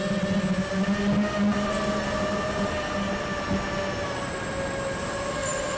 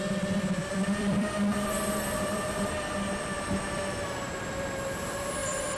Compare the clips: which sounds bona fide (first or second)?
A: first